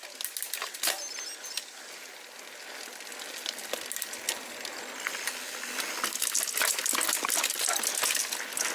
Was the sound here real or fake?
real